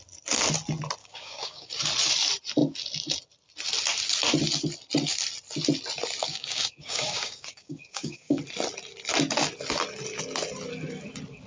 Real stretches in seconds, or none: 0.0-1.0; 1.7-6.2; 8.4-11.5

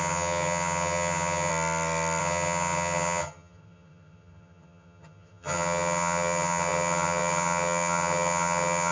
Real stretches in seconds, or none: 1.5-2.2

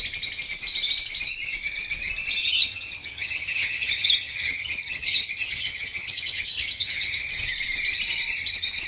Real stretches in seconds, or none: 0.0-2.4; 7.3-8.9

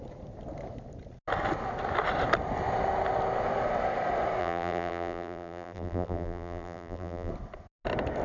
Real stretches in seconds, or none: 0.0-4.4; 7.3-8.2

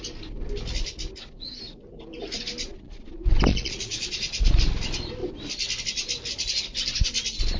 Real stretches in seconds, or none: 0.0-2.6; 3.1-3.5; 4.5-7.6

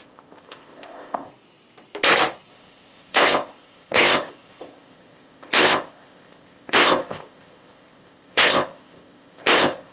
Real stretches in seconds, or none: 1.3-2.5